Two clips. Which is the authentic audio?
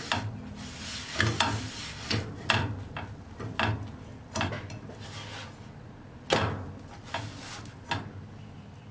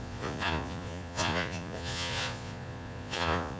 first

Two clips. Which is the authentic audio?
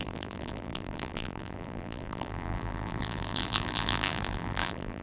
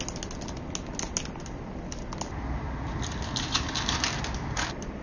second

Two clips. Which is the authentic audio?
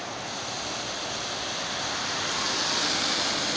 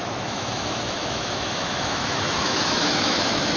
first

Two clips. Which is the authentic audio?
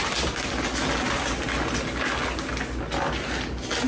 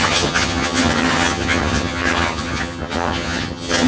first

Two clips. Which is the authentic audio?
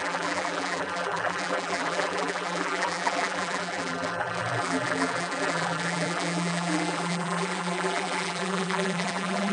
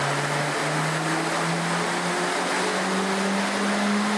second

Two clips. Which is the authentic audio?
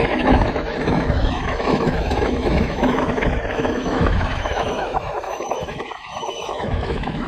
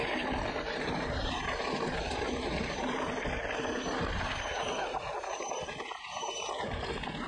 second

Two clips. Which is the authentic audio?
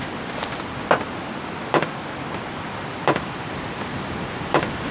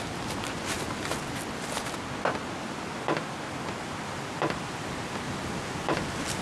second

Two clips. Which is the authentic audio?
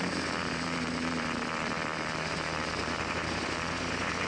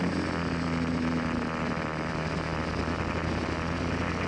second